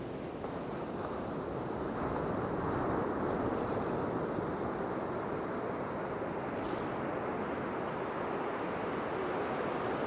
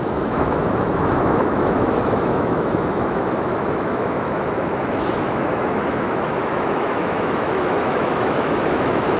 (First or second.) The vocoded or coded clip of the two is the second